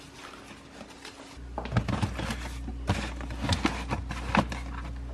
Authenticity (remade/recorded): recorded